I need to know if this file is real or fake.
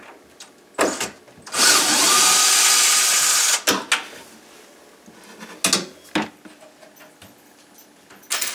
real